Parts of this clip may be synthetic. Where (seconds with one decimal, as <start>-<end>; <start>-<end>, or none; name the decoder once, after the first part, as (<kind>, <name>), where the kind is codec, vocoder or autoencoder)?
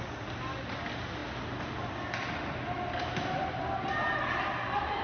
none